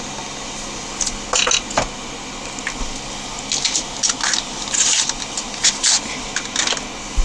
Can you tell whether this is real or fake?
real